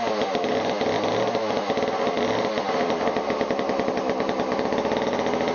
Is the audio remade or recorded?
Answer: recorded